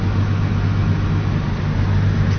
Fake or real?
real